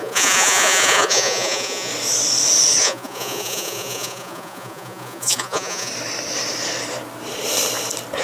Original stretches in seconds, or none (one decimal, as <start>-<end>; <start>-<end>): 1.9-2.8; 5.9-8.2